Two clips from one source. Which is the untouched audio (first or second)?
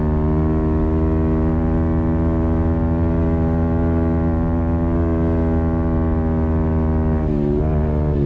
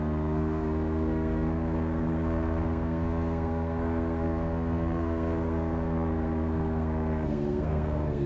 first